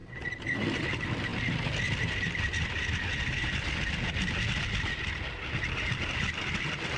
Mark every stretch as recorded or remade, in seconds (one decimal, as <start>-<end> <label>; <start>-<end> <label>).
0.0-7.0 recorded